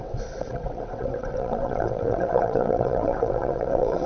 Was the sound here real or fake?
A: fake